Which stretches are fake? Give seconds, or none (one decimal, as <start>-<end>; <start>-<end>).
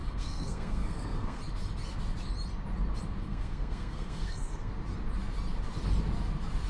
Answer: 0.0-1.4; 3.2-4.7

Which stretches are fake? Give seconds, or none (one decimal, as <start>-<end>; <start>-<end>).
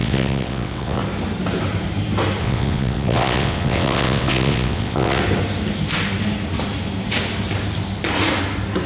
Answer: 0.0-1.0; 2.4-5.2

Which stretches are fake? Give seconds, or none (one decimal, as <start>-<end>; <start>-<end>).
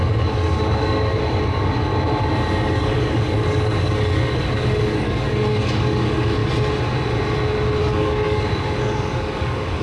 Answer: 0.0-1.9; 2.6-6.4; 7.8-9.8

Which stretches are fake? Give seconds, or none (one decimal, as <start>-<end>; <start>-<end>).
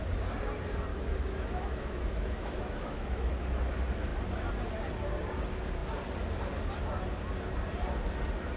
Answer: 0.9-3.3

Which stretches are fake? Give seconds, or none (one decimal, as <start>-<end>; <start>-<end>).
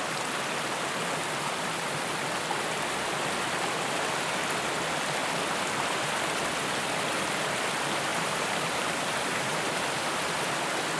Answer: 8.1-9.8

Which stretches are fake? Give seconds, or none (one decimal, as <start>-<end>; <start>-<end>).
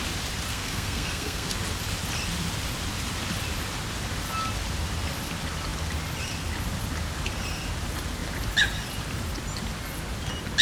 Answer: 0.5-1.5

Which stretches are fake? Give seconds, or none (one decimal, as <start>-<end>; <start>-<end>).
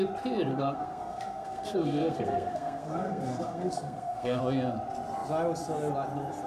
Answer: 0.5-4.4